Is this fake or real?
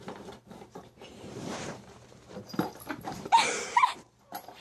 fake